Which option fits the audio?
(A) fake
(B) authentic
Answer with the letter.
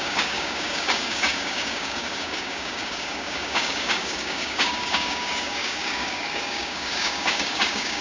A